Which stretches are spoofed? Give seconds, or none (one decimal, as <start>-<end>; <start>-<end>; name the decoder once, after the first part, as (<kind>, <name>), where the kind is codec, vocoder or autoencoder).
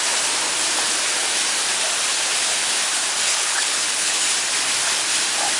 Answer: 3.3-4.2 (codec, HILCodec)